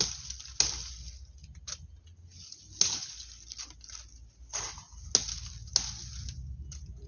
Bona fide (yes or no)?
yes